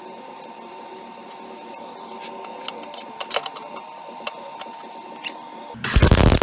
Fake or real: real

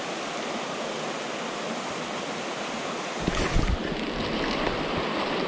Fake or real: real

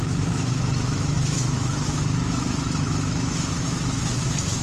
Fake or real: fake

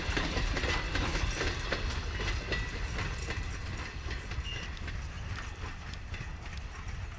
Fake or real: real